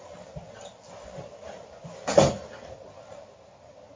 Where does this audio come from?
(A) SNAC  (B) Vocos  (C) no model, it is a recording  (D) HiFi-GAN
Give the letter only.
C